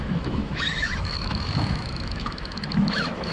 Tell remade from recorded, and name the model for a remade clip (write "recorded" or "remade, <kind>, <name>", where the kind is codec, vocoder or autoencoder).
remade, autoencoder, DAC-VAE